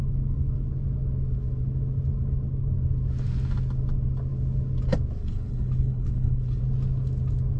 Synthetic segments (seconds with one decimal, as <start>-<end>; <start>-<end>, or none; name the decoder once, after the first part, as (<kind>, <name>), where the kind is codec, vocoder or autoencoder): 5.2-6.6 (codec, HILCodec)